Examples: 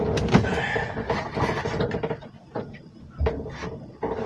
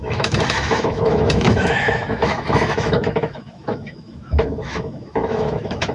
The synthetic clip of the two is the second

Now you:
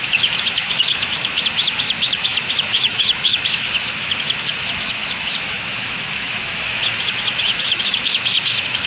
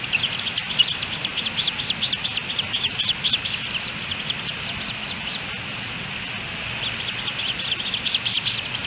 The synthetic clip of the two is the first